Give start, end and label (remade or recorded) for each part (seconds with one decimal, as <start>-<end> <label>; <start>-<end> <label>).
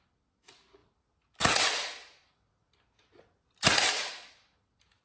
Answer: 0.0-5.0 recorded